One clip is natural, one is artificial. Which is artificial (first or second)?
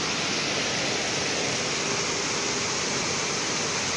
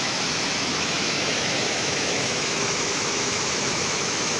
second